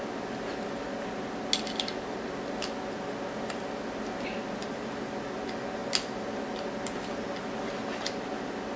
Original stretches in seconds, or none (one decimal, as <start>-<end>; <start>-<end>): 0.0-8.8